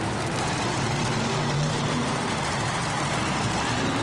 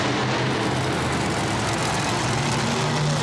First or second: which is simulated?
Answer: first